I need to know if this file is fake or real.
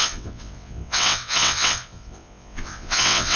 fake